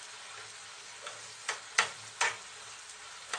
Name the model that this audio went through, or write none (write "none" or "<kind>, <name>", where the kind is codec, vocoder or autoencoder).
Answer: none